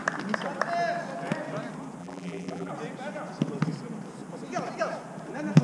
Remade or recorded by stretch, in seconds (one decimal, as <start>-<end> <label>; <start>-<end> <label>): 0.0-2.0 recorded; 2.0-2.7 remade; 2.7-5.6 recorded